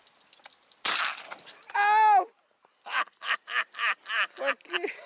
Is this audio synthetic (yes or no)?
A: no